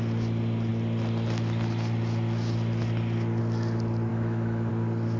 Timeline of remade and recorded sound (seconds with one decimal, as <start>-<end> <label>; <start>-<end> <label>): 0.0-4.1 recorded; 4.1-4.7 remade; 4.7-5.2 recorded